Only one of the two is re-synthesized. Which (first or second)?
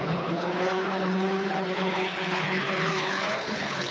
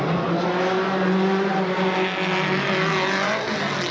first